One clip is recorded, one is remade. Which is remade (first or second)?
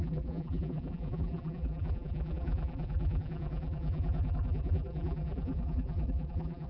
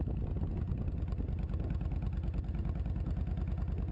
first